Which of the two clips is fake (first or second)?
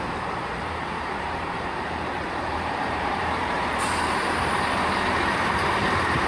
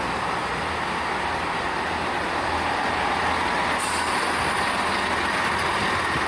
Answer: first